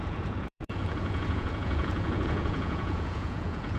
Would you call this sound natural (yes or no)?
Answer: no